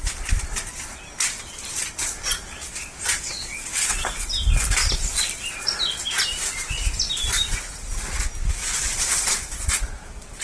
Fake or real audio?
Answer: real